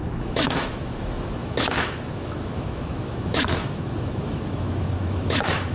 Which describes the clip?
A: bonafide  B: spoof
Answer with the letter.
B